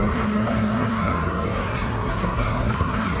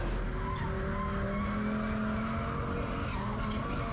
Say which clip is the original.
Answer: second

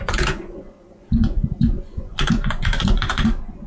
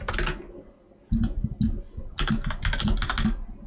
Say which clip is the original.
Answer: second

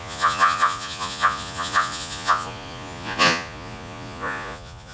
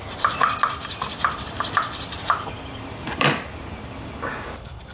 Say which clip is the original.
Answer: second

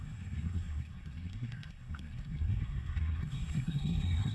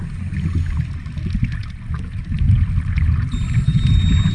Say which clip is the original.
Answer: second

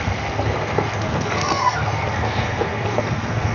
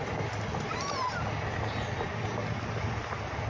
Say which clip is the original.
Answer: second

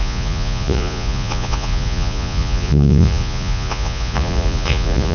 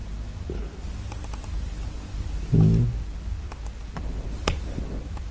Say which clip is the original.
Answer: second